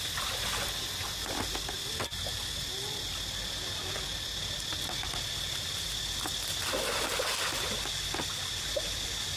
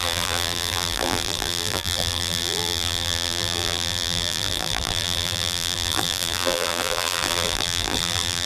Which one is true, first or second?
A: first